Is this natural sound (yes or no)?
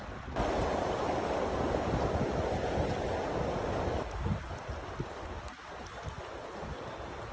yes